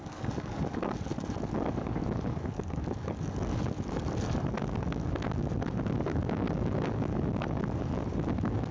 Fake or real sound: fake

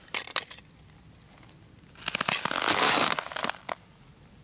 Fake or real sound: real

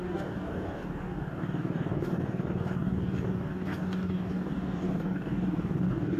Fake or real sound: fake